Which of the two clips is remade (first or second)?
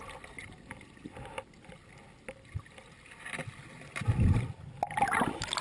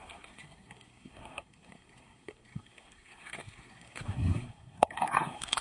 second